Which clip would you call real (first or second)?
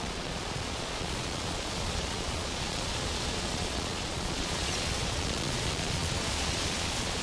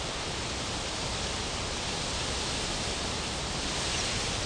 second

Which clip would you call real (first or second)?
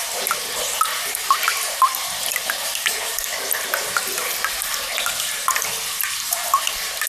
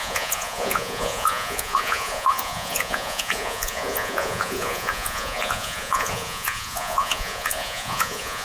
first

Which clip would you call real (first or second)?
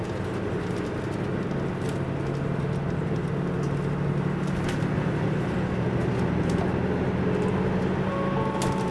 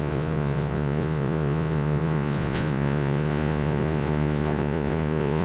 first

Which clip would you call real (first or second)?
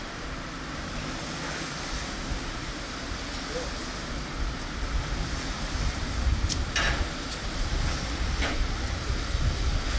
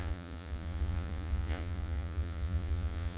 first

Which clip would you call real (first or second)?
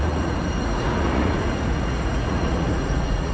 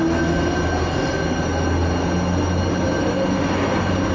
second